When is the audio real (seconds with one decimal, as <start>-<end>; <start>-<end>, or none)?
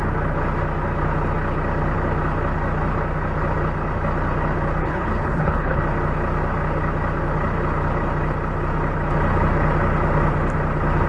0.0-4.8; 5.8-11.1